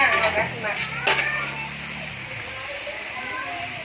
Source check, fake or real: real